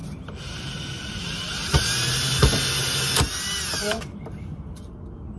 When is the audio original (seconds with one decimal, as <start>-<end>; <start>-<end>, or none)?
0.0-5.4